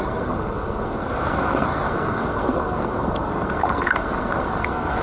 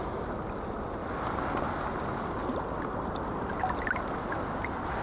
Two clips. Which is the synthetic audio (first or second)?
first